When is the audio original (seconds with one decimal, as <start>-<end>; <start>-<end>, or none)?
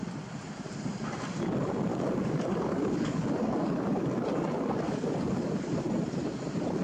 0.0-1.9; 5.8-6.8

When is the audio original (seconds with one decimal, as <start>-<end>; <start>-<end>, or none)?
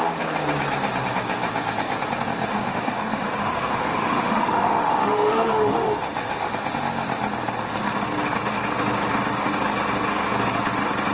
0.0-2.5; 6.5-11.1